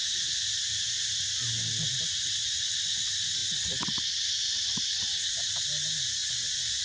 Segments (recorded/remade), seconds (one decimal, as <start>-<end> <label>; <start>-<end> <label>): 0.0-6.8 recorded

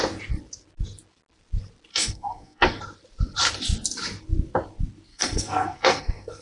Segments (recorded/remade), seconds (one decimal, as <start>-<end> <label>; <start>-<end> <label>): 0.0-1.9 recorded; 1.9-2.8 remade; 2.8-5.1 recorded; 5.1-6.4 remade

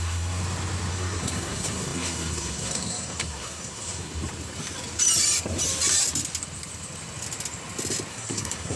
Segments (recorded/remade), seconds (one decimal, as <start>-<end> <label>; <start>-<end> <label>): 0.0-0.4 remade; 0.4-0.9 recorded; 0.9-4.1 remade; 4.1-8.1 recorded; 8.1-8.8 remade

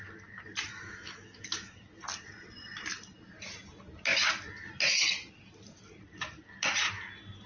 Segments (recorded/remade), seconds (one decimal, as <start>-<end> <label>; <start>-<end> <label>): 0.0-0.7 recorded; 0.7-1.9 remade; 1.9-7.5 recorded

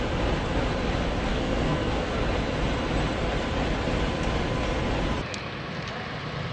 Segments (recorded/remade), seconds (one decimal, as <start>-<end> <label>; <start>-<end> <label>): 0.0-1.3 recorded; 1.3-2.1 remade; 2.1-6.5 recorded

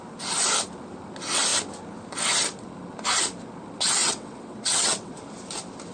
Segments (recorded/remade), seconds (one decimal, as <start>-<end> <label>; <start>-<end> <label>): 0.0-4.0 recorded; 4.0-5.2 remade; 5.2-5.9 recorded

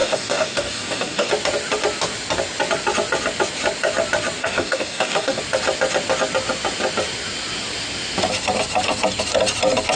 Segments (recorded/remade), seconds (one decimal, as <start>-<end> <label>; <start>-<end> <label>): 0.0-1.3 remade; 1.3-4.4 recorded; 4.4-5.4 remade; 5.4-10.0 recorded

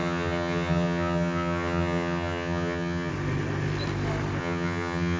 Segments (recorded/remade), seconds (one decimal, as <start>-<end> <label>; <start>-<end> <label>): 0.0-3.1 remade; 3.1-4.4 recorded; 4.4-5.2 remade